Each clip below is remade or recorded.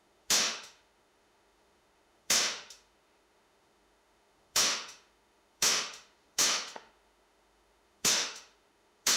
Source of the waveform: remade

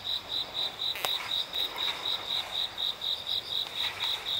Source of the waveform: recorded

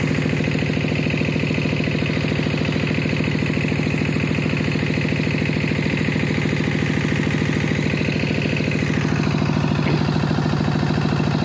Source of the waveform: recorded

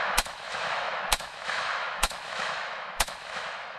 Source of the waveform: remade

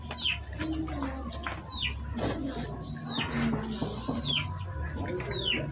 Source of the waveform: recorded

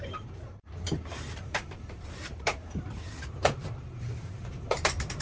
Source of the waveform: remade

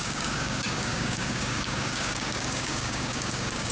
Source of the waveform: remade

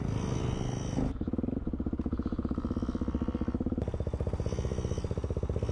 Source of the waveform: recorded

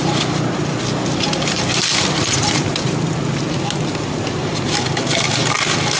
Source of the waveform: recorded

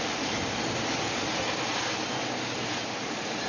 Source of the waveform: recorded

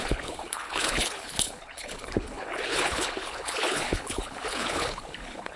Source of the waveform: remade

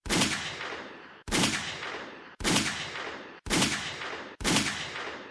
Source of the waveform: remade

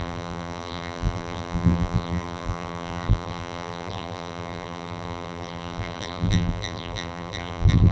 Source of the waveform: remade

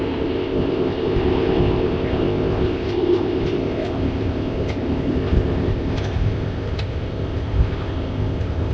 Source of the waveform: remade